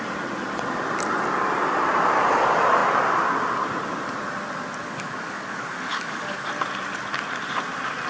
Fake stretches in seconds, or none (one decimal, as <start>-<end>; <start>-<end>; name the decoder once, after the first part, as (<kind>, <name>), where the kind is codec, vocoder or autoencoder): 4.8-6.5 (codec, DAC)